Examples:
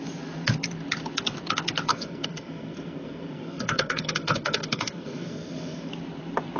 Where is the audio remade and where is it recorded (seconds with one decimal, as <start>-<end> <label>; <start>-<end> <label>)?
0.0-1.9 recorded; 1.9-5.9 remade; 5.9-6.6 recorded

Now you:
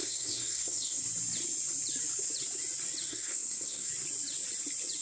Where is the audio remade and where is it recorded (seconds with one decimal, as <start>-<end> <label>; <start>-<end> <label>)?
0.0-1.0 remade; 1.0-3.1 recorded; 3.1-3.9 remade; 3.9-5.0 recorded

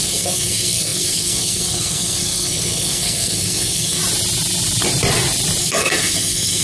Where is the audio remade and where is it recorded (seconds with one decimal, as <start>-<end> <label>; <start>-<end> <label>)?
0.0-4.0 remade; 4.0-5.6 recorded; 5.6-6.6 remade

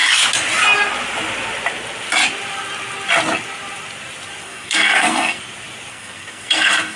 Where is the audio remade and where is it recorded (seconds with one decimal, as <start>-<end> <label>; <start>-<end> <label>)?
0.0-4.4 recorded; 4.4-5.4 remade; 5.4-5.9 recorded; 5.9-7.0 remade

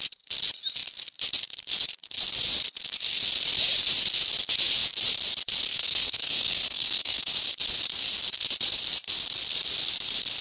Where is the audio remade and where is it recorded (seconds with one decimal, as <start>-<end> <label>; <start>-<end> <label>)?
0.0-5.7 recorded; 5.7-7.3 remade; 7.3-10.4 recorded

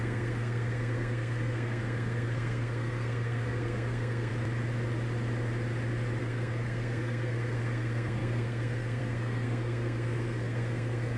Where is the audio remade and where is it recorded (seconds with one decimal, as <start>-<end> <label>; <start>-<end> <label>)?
0.0-4.3 remade; 4.3-6.2 recorded; 6.2-11.2 remade